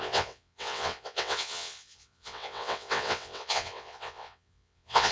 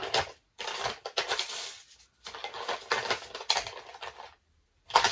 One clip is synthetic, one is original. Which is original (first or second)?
second